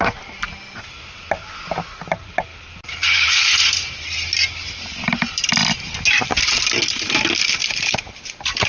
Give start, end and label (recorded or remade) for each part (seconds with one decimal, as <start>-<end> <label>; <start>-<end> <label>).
0.0-2.5 recorded; 2.5-4.9 remade; 4.9-5.6 recorded; 5.6-6.2 remade; 6.2-7.6 recorded; 7.6-8.7 remade

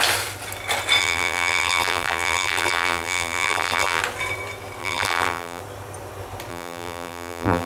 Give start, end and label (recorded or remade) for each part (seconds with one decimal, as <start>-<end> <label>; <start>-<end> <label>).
0.0-1.0 recorded; 1.0-4.0 remade; 4.0-4.8 recorded; 4.8-5.6 remade; 5.6-6.5 recorded; 6.5-7.7 remade

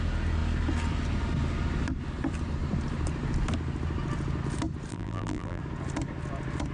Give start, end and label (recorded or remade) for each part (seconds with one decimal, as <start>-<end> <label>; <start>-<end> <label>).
0.0-4.9 recorded; 4.9-5.6 remade; 5.6-6.7 recorded

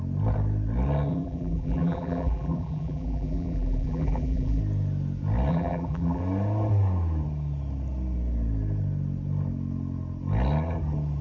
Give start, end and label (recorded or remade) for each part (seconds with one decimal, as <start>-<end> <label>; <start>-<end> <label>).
0.0-1.1 recorded; 1.1-4.6 remade; 4.6-5.5 recorded; 5.5-6.2 remade; 6.2-11.2 recorded

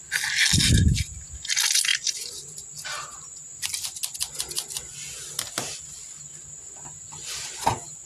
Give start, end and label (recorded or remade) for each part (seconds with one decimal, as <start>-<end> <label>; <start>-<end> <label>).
0.0-1.9 recorded; 1.9-2.7 remade; 2.7-8.1 recorded

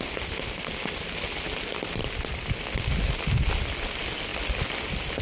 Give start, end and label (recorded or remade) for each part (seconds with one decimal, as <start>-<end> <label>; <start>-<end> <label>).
0.0-5.2 recorded